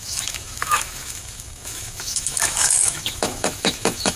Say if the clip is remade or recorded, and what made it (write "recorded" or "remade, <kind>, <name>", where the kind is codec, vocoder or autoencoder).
remade, autoencoder, DAC-VAE